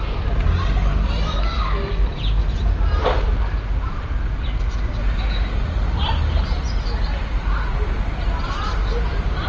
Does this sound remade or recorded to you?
recorded